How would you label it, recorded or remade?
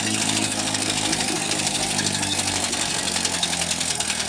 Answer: remade